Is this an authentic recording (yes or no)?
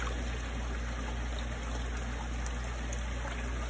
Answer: yes